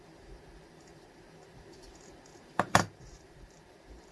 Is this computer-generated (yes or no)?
yes